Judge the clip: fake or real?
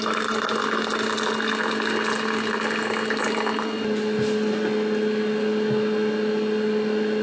real